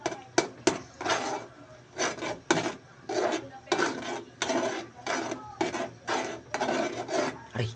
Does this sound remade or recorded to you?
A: recorded